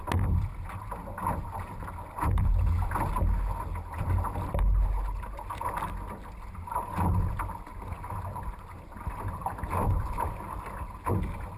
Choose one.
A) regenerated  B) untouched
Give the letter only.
B